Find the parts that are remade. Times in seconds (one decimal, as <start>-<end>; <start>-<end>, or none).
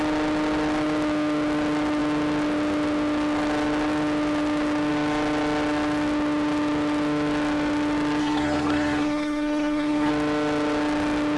8.2-10.1